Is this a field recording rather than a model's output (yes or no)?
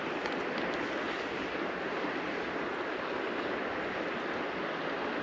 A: yes